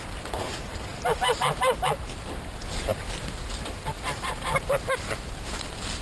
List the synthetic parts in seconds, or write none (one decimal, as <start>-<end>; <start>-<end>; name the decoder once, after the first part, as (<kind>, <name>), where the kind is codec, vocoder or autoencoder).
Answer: 0.0-0.9 (vocoder, BigVGAN v2); 2.3-6.0